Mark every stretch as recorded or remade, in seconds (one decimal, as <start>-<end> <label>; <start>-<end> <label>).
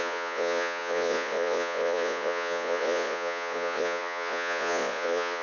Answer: 0.0-5.4 remade